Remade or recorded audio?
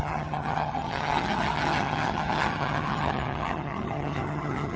remade